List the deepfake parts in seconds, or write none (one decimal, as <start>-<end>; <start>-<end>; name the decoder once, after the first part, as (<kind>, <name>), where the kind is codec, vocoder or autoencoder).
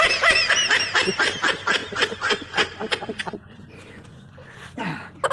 1.8-4.8 (vocoder, Vocos)